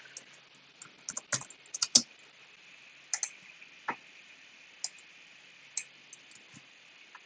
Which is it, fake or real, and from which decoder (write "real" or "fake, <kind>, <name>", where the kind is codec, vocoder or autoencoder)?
real